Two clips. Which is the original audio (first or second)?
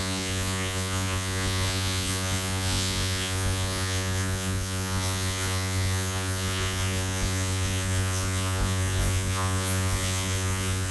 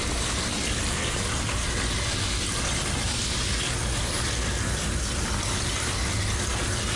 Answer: second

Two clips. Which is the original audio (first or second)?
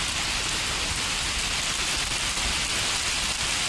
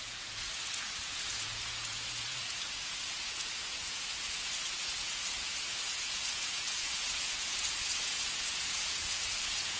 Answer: first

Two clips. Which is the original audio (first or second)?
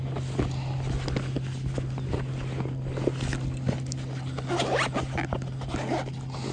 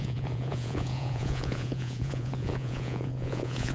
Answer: first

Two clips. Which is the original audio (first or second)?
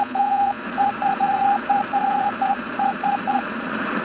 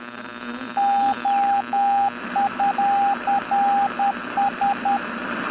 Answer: second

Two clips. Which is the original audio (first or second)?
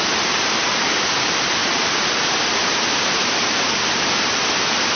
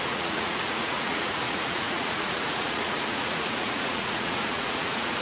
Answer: first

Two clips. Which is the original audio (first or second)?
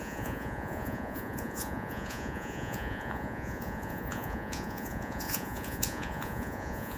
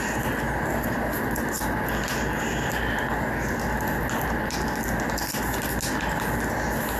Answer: second